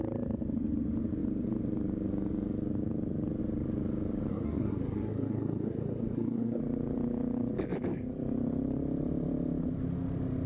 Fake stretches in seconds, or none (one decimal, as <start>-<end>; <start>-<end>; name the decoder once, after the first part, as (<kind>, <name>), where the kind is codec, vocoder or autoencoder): 4.3-6.6 (codec, SNAC)